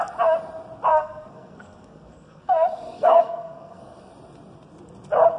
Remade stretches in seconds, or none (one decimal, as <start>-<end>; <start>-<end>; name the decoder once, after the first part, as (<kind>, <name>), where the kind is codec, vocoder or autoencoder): 0.9-4.1 (codec, SNAC)